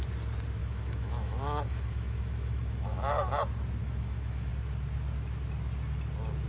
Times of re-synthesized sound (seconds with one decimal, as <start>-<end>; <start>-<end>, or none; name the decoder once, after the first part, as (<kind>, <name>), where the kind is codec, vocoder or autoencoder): 0.6-3.1 (autoencoder, DAC-VAE); 3.8-4.5